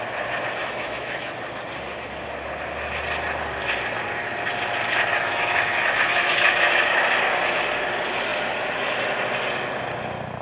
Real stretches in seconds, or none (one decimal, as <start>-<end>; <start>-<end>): 0.0-0.6; 1.3-5.1; 7.0-10.4